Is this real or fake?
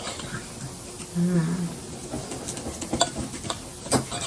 real